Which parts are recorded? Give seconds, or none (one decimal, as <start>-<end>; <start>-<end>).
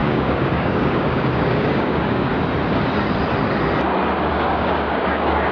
2.3-4.3